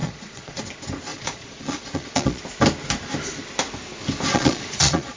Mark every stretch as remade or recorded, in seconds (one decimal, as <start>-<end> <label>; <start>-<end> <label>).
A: 0.0-0.6 remade; 0.6-1.1 recorded; 1.1-2.4 remade; 2.4-4.3 recorded; 4.3-5.2 remade

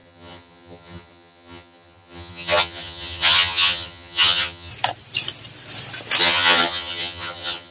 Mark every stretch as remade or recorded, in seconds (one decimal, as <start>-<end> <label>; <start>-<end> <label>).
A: 0.0-4.7 remade; 4.7-6.2 recorded; 6.2-7.7 remade

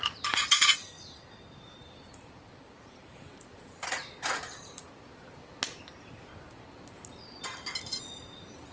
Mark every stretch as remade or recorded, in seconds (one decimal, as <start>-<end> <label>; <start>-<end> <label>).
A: 0.0-5.4 remade; 5.4-8.0 recorded; 8.0-8.7 remade

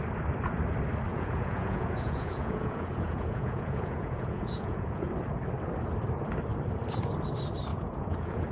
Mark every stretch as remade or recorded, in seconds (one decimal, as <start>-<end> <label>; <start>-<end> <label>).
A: 0.0-1.1 recorded; 1.1-5.1 remade; 5.1-7.7 recorded; 7.7-8.5 remade

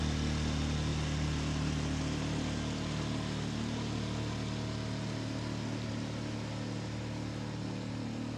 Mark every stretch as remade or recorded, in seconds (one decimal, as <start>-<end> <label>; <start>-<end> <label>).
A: 0.0-8.4 recorded